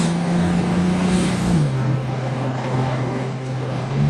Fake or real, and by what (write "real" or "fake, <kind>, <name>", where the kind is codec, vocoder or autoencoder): fake, codec, DAC